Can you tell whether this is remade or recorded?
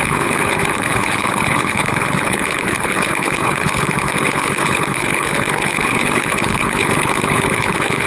remade